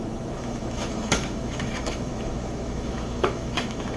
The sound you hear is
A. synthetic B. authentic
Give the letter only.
A